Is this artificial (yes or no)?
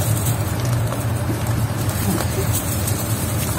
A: yes